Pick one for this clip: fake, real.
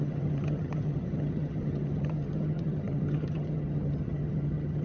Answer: fake